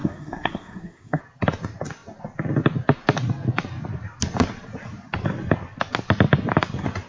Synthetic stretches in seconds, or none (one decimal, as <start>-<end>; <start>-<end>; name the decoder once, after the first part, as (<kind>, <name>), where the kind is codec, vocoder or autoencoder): 0.0-1.2 (codec, SNAC)